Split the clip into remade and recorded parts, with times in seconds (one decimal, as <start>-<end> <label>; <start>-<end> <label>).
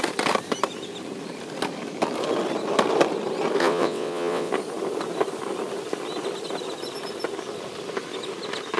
0.0-3.6 recorded; 3.6-4.5 remade; 4.5-8.8 recorded